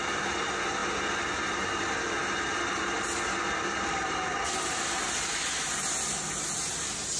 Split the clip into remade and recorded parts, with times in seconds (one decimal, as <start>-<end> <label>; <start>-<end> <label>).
0.0-7.2 recorded